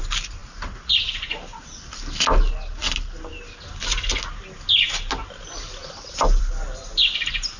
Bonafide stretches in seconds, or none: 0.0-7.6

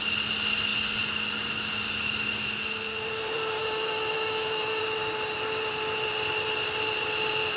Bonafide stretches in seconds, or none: 0.0-3.6; 4.8-7.6

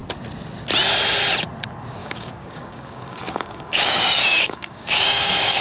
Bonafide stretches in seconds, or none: 0.0-2.0

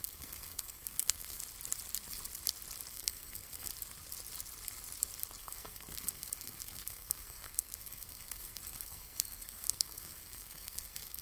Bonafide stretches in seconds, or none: 1.4-2.9; 3.7-5.4

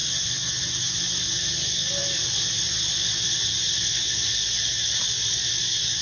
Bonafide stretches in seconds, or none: 0.0-6.0

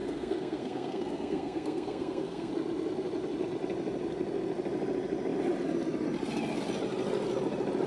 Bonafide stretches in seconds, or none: 2.5-7.9

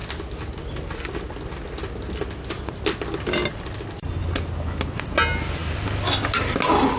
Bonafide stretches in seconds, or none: 0.0-7.0

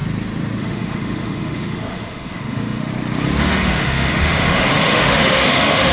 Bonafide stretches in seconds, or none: 0.0-0.6; 2.9-3.4